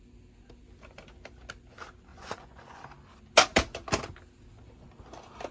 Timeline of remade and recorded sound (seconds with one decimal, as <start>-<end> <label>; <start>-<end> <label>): 0.0-2.1 recorded; 2.1-2.8 remade; 2.8-5.5 recorded